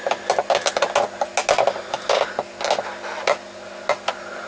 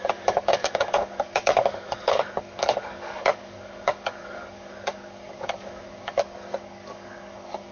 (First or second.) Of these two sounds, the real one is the first